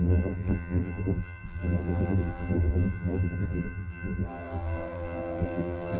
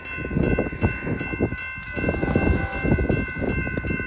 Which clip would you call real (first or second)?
second